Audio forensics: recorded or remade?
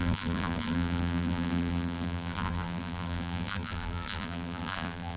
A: remade